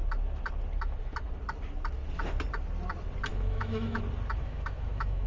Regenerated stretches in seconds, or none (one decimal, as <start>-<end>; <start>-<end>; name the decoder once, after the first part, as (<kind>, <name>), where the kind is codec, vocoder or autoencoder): 3.3-4.0 (autoencoder, DAC-VAE); 4.4-5.3